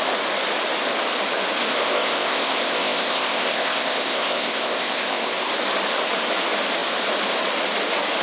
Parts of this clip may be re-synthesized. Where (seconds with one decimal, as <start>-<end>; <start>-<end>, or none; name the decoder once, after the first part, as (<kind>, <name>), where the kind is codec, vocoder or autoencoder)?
1.6-5.5 (codec, ZipCodec)